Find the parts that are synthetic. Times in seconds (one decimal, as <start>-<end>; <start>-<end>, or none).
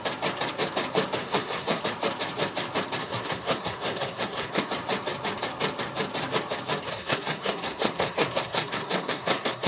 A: 1.2-1.8; 3.0-4.7; 6.9-9.7